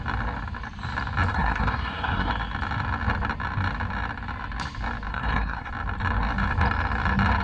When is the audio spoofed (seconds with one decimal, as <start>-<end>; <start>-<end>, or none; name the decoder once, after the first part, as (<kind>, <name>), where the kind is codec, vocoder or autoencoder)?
1.3-2.3 (codec, SNAC); 5.1-5.7